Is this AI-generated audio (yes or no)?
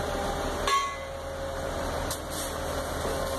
no